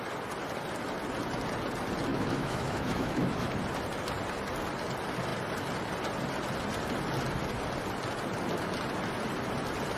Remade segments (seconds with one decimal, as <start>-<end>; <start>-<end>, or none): 2.1-3.5